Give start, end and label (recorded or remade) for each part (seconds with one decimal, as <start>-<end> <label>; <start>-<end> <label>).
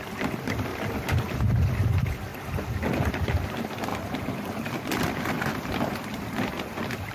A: 0.0-2.3 remade; 2.3-3.1 recorded; 3.1-3.9 remade; 3.9-4.6 recorded; 4.6-7.1 remade